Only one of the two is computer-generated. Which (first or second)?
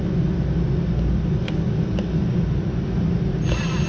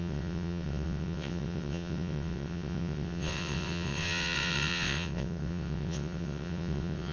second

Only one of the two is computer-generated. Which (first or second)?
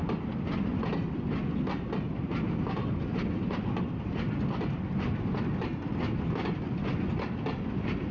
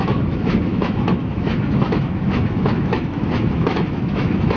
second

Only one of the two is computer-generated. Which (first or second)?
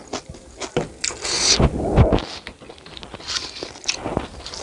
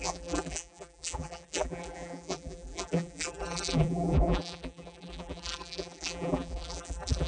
second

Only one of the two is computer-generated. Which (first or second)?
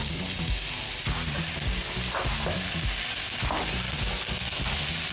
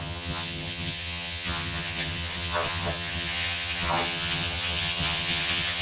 second